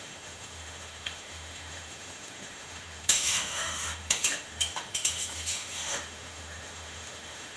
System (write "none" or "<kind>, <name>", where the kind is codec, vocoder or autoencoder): autoencoder, DAC-VAE